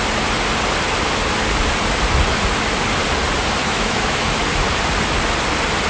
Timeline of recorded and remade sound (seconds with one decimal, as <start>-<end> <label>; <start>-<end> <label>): 0.0-3.6 recorded; 3.6-4.4 remade; 4.4-5.9 recorded